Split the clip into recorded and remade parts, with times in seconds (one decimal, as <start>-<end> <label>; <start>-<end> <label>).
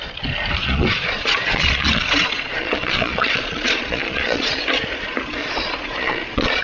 0.0-0.6 recorded; 0.6-4.6 remade; 4.6-5.4 recorded; 5.4-6.6 remade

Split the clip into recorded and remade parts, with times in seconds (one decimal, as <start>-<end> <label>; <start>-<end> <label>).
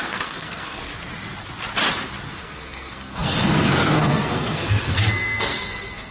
0.0-0.9 remade; 0.9-2.3 recorded; 2.3-6.1 remade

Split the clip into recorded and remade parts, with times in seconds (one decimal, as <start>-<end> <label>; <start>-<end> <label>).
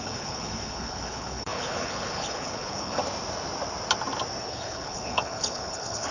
0.0-3.0 remade; 3.0-4.4 recorded; 4.4-6.1 remade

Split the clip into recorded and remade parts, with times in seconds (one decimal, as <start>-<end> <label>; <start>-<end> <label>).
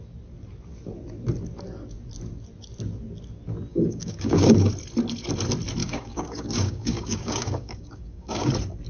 0.0-3.7 recorded; 3.7-4.7 remade; 4.7-5.8 recorded; 5.8-8.5 remade; 8.5-8.9 recorded